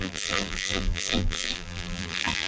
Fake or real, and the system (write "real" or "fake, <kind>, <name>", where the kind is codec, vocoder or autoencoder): fake, vocoder, BigVGAN v2